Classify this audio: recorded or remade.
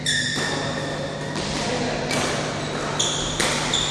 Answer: recorded